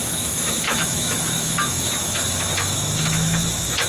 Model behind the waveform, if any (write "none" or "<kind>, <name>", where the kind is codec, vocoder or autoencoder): autoencoder, DAC-VAE